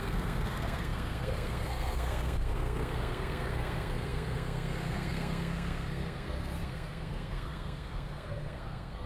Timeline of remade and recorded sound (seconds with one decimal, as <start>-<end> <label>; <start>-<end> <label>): 0.0-9.1 remade